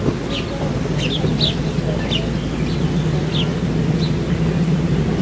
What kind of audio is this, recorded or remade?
recorded